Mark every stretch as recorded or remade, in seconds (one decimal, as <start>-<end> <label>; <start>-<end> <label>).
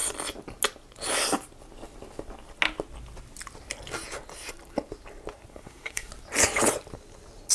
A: 0.0-5.5 recorded; 5.5-6.1 remade; 6.1-7.5 recorded